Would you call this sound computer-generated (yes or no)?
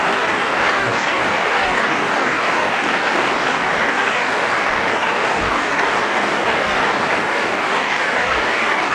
yes